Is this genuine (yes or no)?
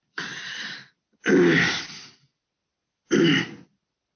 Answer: yes